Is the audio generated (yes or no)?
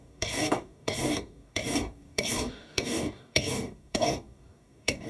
yes